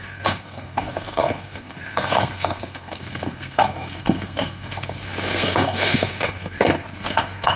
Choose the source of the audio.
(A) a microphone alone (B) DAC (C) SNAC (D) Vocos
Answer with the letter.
C